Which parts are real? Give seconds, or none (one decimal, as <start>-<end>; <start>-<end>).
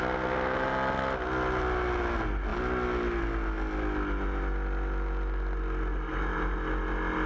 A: 0.0-7.3